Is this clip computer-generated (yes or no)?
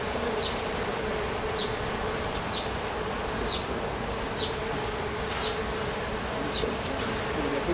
no